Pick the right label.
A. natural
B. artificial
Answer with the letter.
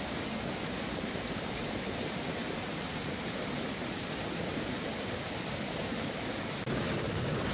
B